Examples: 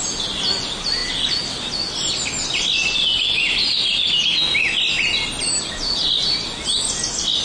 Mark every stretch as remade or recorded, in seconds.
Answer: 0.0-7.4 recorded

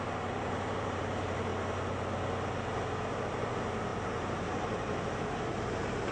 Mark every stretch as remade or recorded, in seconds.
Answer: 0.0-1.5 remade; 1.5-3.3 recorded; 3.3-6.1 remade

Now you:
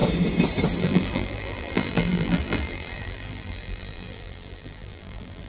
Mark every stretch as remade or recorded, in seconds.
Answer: 0.0-0.8 recorded; 0.8-5.5 remade

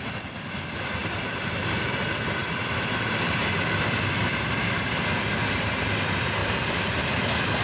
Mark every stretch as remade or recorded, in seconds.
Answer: 0.0-1.0 recorded; 1.0-1.6 remade; 1.6-2.4 recorded; 2.4-3.7 remade; 3.7-6.4 recorded; 6.4-7.6 remade

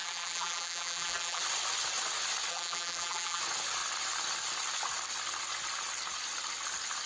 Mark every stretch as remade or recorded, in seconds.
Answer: 0.0-1.4 remade; 1.4-2.5 recorded; 2.5-3.4 remade; 3.4-7.1 recorded

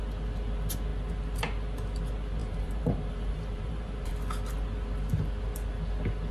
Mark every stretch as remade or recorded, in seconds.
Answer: 0.0-2.4 recorded; 2.4-4.1 remade; 4.1-6.3 recorded

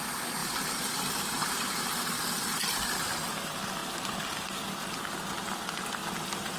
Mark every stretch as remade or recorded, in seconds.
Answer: 0.0-0.4 recorded; 0.4-2.6 remade; 2.6-6.6 recorded

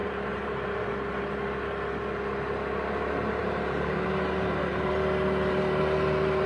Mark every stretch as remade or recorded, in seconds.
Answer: 0.0-0.9 remade; 0.9-3.4 recorded; 3.4-4.9 remade; 4.9-6.5 recorded